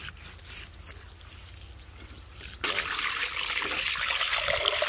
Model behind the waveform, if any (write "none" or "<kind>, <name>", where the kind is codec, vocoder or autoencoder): none